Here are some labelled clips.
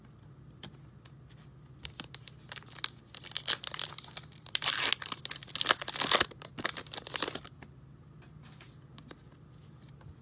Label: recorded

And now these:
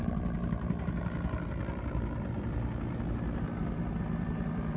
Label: recorded